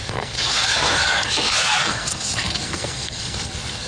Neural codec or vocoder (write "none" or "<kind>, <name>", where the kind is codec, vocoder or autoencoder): codec, SNAC